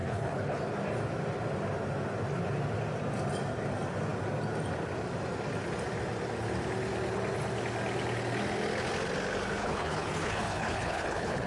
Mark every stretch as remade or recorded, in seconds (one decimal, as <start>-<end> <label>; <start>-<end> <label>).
0.0-0.6 remade; 0.6-9.6 recorded; 9.6-11.5 remade